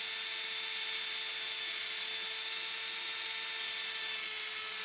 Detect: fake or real real